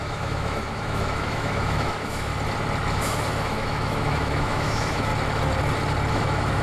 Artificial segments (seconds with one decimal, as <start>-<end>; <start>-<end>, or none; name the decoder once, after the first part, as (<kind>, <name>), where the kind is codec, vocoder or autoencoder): 0.0-2.3 (autoencoder, DAC-VAE); 2.9-5.1; 6.1-6.6